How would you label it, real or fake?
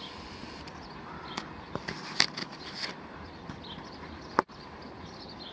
real